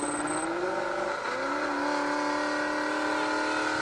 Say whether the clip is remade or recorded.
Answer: recorded